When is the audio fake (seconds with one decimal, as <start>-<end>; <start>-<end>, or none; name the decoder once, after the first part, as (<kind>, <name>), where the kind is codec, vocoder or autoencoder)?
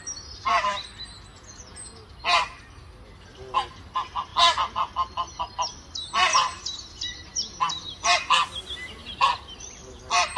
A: 1.3-1.9 (vocoder, Vocos)